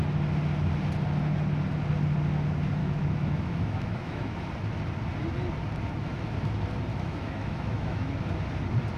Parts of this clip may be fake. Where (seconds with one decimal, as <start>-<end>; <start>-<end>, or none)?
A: 2.8-4.4; 6.9-8.1